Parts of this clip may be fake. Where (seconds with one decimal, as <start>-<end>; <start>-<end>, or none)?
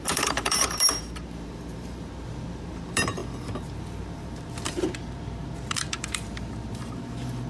0.0-3.2; 3.8-7.5